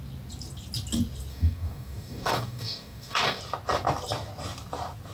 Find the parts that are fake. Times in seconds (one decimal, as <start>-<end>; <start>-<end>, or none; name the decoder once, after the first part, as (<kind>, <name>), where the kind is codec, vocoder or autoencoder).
1.3-3.4 (codec, DAC)